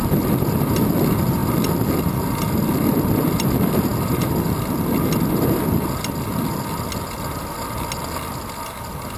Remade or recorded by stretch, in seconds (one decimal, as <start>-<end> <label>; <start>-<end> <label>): 0.0-9.2 recorded